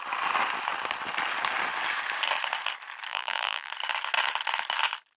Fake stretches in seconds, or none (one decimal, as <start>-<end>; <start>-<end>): 3.1-3.7